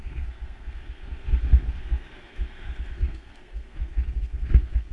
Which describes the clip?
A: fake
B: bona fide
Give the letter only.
A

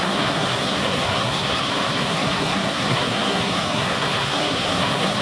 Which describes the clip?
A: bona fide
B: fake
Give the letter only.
B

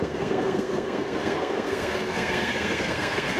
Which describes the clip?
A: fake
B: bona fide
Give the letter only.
A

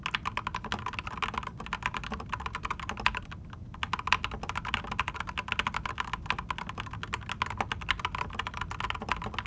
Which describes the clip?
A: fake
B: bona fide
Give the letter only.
B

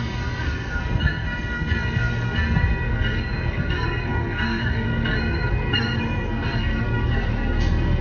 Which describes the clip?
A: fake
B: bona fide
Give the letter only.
A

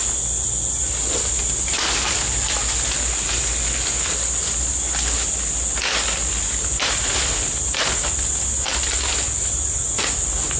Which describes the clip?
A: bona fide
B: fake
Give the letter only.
A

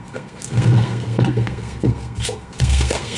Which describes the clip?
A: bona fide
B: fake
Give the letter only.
B